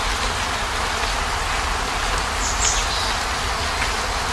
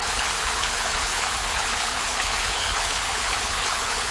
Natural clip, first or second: first